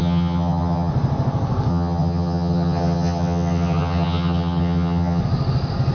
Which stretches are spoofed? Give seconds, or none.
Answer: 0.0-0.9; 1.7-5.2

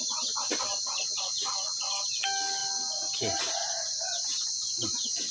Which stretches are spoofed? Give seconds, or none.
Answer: none